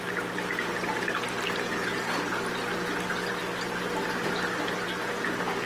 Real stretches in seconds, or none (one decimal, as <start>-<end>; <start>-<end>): 0.0-5.7